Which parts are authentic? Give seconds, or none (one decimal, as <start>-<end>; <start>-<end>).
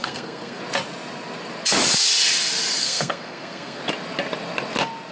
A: 0.6-2.8; 3.8-5.1